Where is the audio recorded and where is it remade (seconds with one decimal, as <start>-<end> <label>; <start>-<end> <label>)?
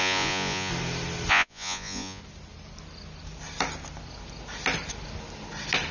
0.0-0.7 remade; 0.7-1.3 recorded; 1.3-2.2 remade; 2.2-5.9 recorded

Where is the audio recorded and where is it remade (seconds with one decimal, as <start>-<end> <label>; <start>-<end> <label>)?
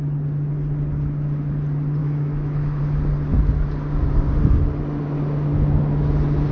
0.0-2.0 recorded; 2.0-2.8 remade; 2.8-6.5 recorded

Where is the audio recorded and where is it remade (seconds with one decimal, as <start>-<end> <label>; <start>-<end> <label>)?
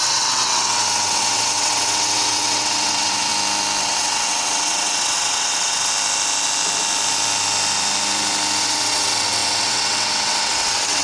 0.0-3.3 remade; 3.3-3.8 recorded; 3.8-5.9 remade; 5.9-8.6 recorded; 8.6-11.0 remade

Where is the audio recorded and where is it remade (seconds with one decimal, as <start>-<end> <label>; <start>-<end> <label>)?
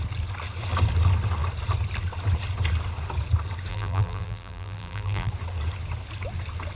0.0-3.7 recorded; 3.7-5.3 remade; 5.3-6.8 recorded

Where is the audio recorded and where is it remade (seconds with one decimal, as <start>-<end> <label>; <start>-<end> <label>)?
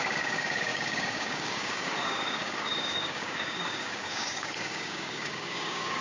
0.0-6.0 remade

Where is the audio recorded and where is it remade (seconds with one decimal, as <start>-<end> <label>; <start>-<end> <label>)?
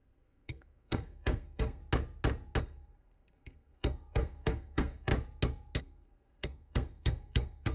0.0-1.8 remade; 1.8-2.6 recorded; 2.6-5.1 remade; 5.1-5.8 recorded; 5.8-7.7 remade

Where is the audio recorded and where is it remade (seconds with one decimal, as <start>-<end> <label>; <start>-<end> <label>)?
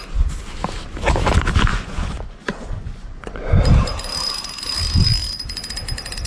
0.0-1.7 recorded; 1.7-3.6 remade; 3.6-6.3 recorded